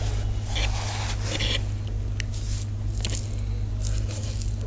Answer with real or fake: real